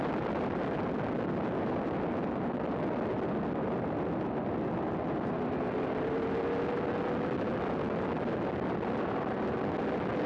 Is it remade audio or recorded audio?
recorded